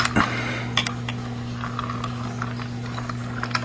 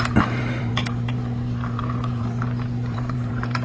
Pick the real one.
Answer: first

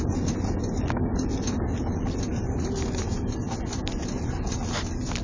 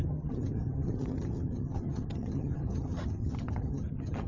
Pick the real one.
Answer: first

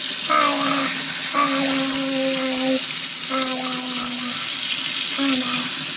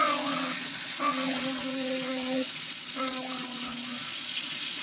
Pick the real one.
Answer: first